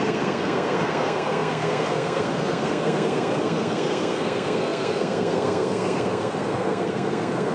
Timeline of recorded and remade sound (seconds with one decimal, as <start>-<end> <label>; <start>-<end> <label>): 0.0-7.5 remade